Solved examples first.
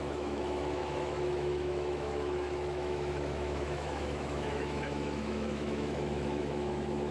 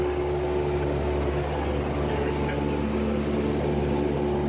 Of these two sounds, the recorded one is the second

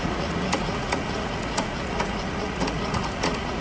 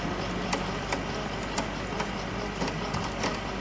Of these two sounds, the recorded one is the second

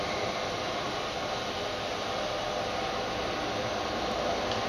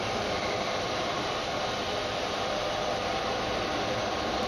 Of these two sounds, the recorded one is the first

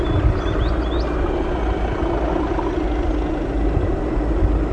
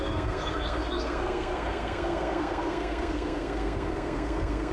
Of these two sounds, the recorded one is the first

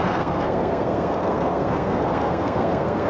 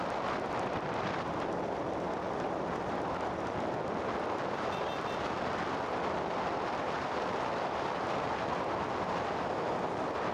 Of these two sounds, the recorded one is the second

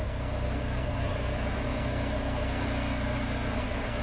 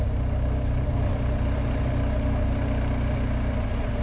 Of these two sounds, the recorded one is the second